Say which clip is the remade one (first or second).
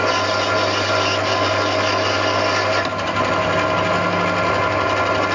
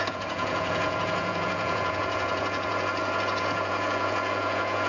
second